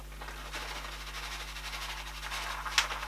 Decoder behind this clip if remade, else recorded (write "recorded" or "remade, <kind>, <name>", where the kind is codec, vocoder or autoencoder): recorded